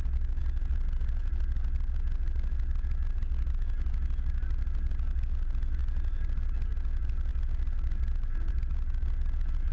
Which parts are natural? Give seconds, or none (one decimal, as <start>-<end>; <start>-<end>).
0.0-9.7